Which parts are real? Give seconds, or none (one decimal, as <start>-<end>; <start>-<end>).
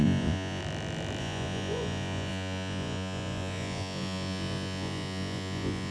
0.6-1.2